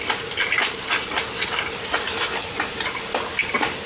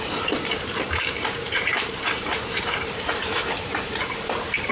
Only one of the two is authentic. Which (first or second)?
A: first